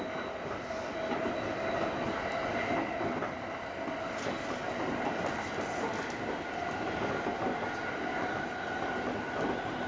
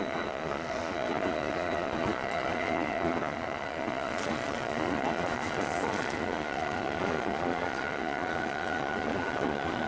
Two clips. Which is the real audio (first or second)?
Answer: first